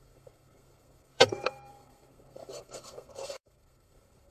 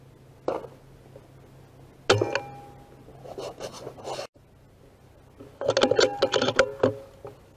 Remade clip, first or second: first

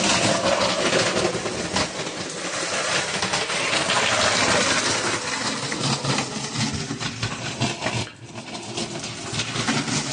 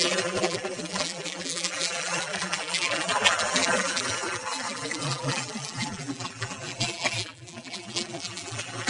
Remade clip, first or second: second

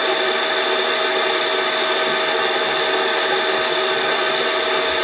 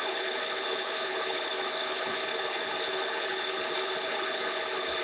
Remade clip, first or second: second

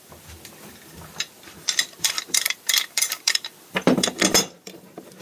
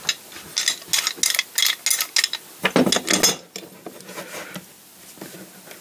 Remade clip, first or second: first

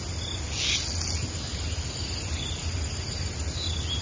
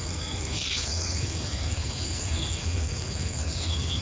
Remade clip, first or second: second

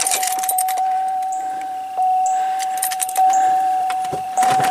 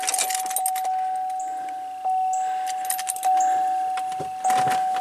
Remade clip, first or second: first